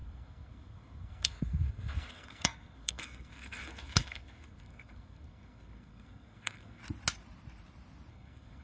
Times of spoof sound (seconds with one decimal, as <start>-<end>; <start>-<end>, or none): 0.0-6.8; 8.1-8.6

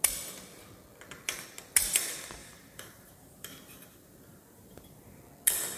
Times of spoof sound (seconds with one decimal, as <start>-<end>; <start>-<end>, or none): 2.4-5.2

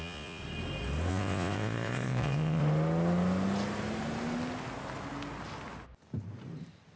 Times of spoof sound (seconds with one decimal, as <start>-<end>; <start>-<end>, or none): 0.0-0.4; 1.1-2.6